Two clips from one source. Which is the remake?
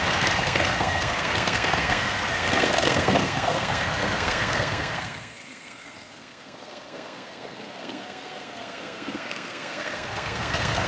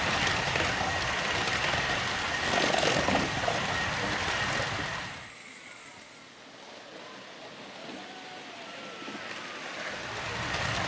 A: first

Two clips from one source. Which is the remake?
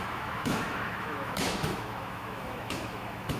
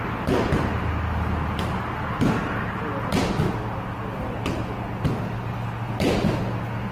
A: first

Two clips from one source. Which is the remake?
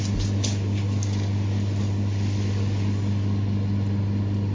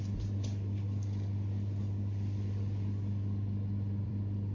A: second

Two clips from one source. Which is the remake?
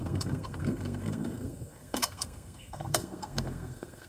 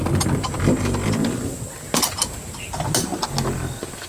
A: first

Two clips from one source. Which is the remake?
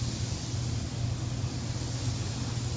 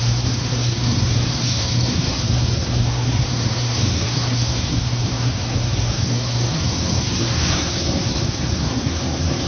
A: second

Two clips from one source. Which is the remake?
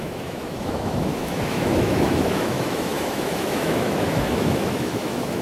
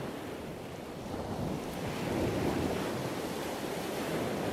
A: first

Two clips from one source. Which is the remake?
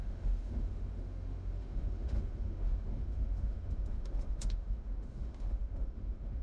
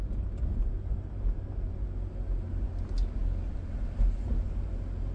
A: first